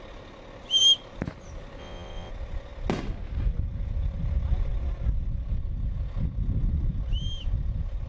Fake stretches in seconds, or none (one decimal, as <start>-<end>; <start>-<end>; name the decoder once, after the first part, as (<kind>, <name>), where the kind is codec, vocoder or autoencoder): 1.8-2.3 (vocoder, WaveNeXt)